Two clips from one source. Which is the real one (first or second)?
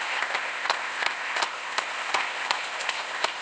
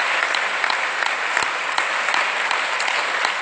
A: second